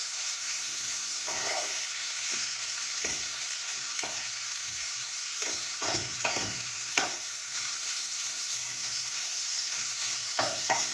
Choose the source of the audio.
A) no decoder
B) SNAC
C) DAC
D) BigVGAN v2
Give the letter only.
B